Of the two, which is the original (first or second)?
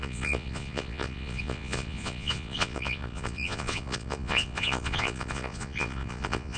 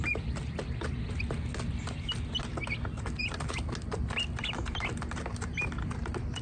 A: second